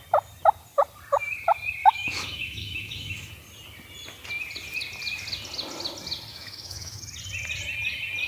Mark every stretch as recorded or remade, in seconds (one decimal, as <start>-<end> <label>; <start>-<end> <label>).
0.0-1.8 recorded; 1.8-3.3 remade; 3.3-6.3 recorded; 6.3-7.0 remade; 7.0-8.3 recorded